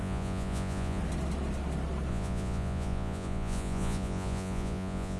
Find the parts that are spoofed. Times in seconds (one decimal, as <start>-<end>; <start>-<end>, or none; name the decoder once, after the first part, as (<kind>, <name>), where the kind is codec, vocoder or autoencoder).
0.0-1.0 (vocoder, Vocos); 2.1-5.2